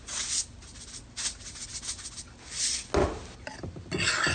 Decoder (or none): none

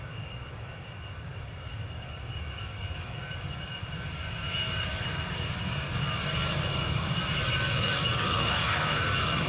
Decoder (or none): codec, DAC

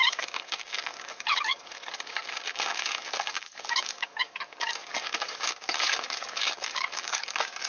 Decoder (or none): codec, DAC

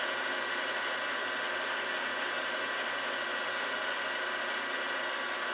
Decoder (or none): none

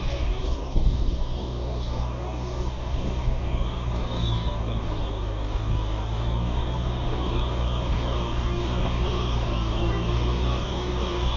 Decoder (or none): codec, DAC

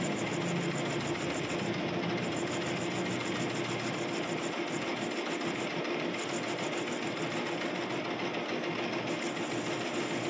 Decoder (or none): none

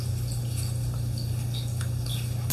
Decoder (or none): none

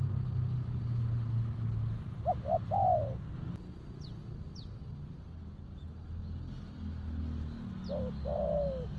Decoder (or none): none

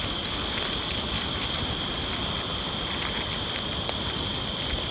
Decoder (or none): none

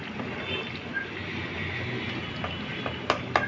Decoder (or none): none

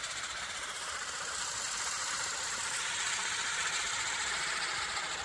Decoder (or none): none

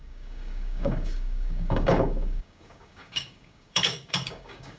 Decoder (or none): codec, DAC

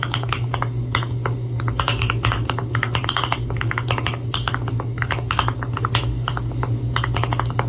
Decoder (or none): codec, DAC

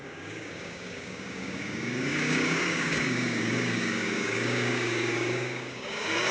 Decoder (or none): codec, DAC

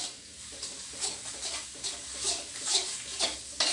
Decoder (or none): codec, DAC